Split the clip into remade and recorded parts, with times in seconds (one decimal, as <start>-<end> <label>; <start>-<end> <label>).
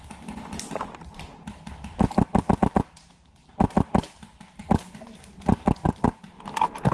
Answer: 0.0-4.6 recorded; 4.6-5.2 remade; 5.2-6.9 recorded